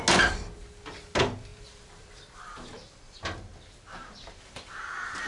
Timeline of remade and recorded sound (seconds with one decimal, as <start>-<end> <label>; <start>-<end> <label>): 0.0-1.5 recorded; 1.5-4.7 remade; 4.7-5.3 recorded